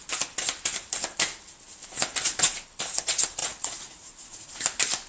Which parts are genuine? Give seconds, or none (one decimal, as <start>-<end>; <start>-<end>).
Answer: 0.0-3.4; 4.5-5.1